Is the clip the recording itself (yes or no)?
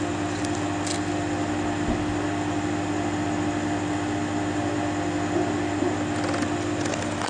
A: yes